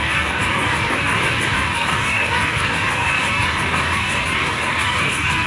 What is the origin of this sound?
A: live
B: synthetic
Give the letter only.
B